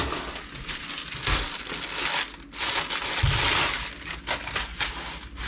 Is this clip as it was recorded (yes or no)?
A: yes